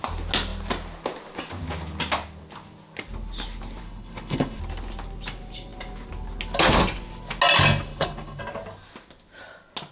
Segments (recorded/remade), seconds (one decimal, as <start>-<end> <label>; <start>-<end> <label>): 0.0-3.8 recorded; 3.8-4.6 remade; 4.6-7.9 recorded; 7.9-8.4 remade; 8.4-9.9 recorded